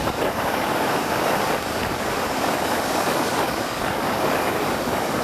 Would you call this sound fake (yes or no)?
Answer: yes